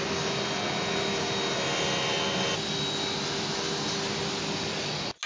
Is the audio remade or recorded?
recorded